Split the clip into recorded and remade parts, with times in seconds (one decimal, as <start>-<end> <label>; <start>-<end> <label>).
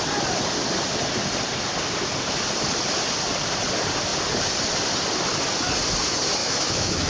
0.0-6.4 recorded; 6.4-7.1 remade